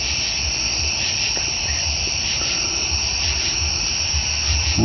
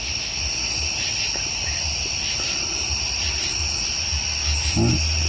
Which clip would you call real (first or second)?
second